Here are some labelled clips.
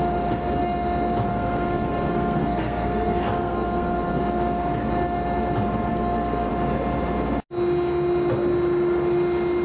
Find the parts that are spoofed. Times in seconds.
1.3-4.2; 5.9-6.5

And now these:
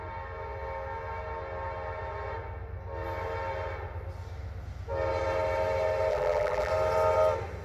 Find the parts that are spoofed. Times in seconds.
6.1-6.7

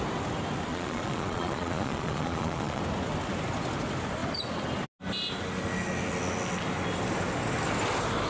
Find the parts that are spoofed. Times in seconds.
0.7-2.8

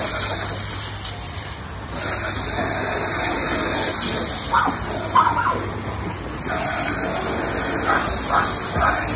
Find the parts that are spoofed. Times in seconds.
none